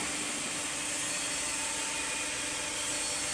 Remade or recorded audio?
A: recorded